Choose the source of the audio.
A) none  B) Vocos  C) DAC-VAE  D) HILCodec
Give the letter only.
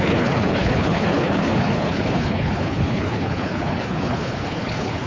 D